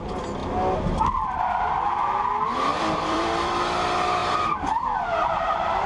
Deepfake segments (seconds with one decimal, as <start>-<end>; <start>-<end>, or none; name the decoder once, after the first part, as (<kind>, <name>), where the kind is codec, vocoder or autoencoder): 2.7-3.6 (vocoder, BigVGAN v2); 4.2-5.9